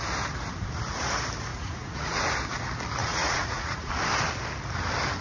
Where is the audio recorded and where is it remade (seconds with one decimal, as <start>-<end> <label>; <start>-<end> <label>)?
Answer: 0.0-1.5 recorded; 1.5-2.3 remade; 2.3-3.0 recorded; 3.0-3.9 remade; 3.9-5.2 recorded